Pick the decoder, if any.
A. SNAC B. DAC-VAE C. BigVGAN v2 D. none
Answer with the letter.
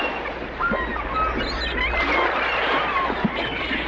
D